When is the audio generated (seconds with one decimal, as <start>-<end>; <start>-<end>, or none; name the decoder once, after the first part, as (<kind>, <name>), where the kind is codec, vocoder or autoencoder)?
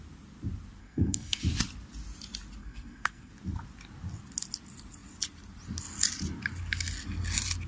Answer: 0.8-1.4 (codec, SNAC); 2.6-3.3